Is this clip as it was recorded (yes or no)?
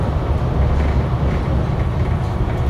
yes